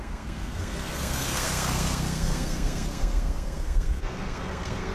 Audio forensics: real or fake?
fake